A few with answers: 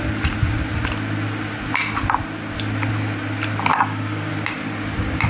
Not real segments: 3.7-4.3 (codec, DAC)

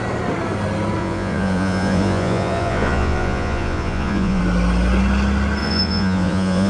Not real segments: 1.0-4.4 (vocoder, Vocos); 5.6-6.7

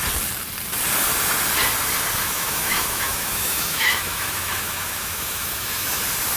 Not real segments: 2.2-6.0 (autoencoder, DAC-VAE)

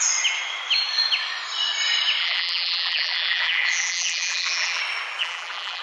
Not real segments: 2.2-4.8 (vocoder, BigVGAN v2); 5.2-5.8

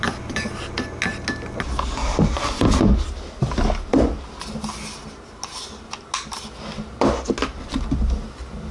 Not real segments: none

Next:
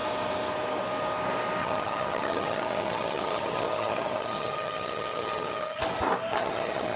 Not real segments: 1.6-5.8 (vocoder, HiFi-GAN); 6.3-7.0

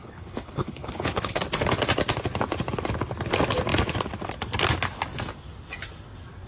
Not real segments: 0.0-1.4 (codec, HILCodec)

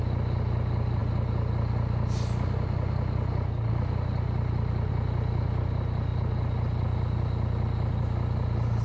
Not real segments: none